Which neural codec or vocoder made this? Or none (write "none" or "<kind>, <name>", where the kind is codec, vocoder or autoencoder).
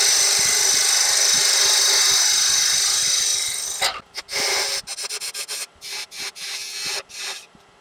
none